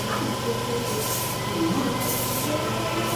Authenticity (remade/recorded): recorded